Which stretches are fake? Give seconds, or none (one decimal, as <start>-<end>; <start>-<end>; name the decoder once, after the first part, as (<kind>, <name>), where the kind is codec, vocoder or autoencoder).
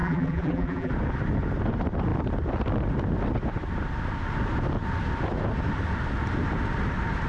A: 0.0-0.9 (vocoder, BigVGAN v2)